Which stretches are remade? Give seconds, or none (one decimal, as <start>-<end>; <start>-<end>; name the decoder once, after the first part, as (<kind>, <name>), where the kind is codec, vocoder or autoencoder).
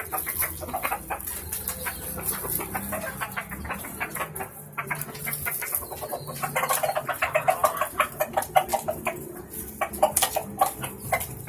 none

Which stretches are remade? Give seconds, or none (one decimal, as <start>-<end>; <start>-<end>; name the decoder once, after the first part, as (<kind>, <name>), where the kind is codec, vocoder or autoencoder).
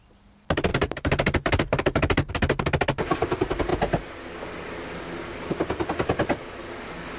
0.7-2.3 (vocoder, BigVGAN v2)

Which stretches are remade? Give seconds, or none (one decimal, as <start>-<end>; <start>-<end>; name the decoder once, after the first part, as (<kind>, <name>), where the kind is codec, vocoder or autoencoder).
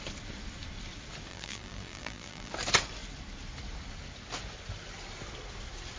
1.3-2.5 (vocoder, BigVGAN v2)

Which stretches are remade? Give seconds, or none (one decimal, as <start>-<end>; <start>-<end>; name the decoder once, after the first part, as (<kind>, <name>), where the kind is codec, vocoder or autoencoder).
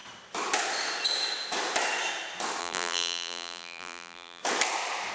2.6-4.4 (vocoder, BigVGAN v2)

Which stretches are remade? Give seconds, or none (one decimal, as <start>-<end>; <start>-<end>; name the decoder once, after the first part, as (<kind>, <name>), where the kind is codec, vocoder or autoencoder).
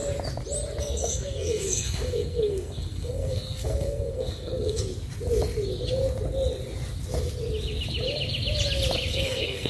0.8-4.9 (codec, SNAC); 9.1-9.7